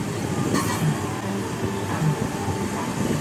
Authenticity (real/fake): real